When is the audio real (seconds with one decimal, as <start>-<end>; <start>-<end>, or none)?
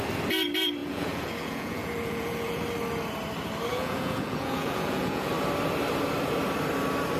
0.0-0.8; 2.6-3.7; 5.3-7.2